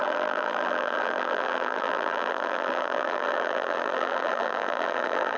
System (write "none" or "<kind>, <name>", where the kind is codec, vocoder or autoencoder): vocoder, BigVGAN v2